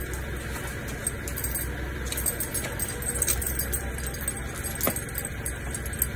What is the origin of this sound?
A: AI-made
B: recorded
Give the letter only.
B